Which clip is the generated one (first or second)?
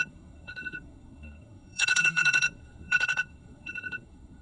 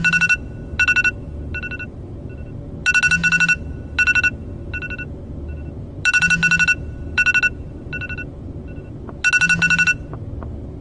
first